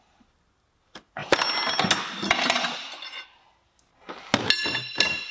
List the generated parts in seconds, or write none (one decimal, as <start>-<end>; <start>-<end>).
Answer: none